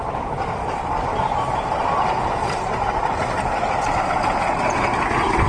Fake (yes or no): no